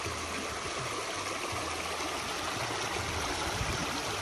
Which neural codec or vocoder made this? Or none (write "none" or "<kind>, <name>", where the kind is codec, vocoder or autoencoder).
none